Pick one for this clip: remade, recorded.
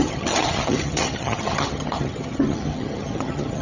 remade